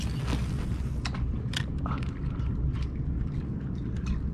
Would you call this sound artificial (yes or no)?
no